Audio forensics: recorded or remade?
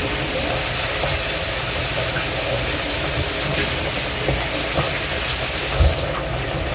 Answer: recorded